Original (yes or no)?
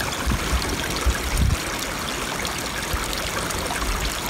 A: yes